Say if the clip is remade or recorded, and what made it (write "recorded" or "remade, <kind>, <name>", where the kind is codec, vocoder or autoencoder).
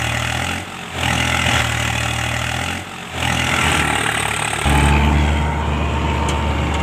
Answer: recorded